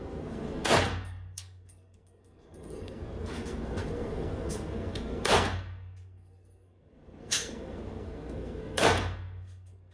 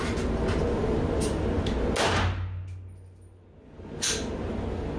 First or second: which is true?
second